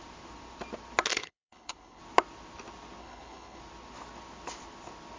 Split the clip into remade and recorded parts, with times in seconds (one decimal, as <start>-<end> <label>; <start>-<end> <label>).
0.0-1.1 recorded; 1.1-2.0 remade; 2.0-3.0 recorded; 3.0-3.6 remade; 3.6-5.2 recorded